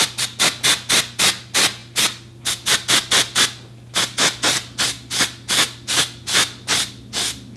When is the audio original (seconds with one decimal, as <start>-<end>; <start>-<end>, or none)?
0.0-7.6